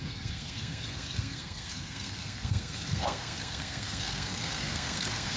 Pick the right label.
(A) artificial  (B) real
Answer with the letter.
A